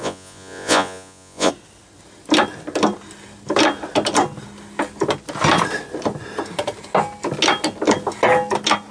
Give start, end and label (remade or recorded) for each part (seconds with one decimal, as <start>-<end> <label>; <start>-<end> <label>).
0.0-1.5 remade; 1.5-8.9 recorded